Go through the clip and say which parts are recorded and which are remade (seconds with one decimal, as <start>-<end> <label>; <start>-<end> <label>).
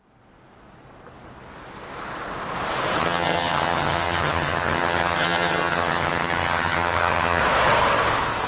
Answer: 0.0-3.0 recorded; 3.0-7.4 remade; 7.4-8.5 recorded